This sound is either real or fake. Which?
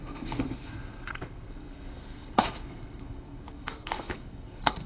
fake